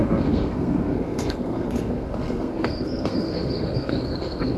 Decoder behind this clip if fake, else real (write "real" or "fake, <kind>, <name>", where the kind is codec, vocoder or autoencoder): fake, codec, SNAC